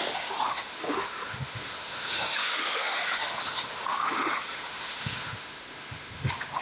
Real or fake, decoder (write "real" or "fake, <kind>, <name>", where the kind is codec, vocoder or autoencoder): fake, autoencoder, DAC-VAE